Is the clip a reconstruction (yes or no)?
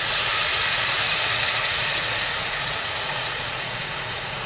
yes